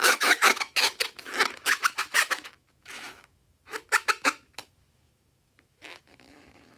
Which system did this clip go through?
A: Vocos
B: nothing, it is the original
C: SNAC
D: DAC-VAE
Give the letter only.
D